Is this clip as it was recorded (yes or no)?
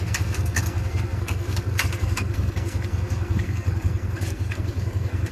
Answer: no